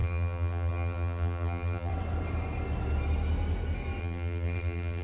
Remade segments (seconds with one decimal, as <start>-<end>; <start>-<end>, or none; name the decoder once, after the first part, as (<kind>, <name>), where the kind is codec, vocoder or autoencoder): 0.0-1.9 (vocoder, BigVGAN v2); 4.0-5.0